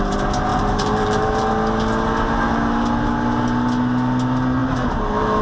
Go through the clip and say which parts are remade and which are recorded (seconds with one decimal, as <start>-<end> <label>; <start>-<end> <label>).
0.0-0.5 recorded; 0.5-1.5 remade; 1.5-4.6 recorded; 4.6-5.4 remade